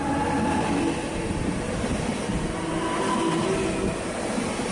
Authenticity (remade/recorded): recorded